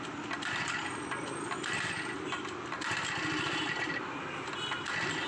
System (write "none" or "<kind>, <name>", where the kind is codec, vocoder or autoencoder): vocoder, BigVGAN v2